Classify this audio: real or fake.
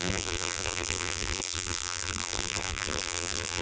fake